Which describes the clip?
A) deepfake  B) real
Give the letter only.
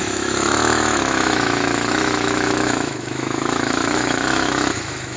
A